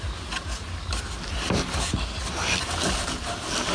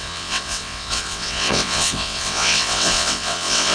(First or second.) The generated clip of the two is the second